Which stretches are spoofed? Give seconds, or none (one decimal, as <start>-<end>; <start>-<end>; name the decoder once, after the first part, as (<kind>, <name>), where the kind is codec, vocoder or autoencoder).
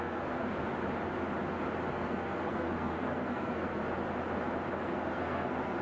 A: 0.0-0.7 (codec, SNAC); 1.9-3.8; 4.8-5.8